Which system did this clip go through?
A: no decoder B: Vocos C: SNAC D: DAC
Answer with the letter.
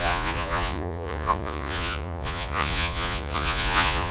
B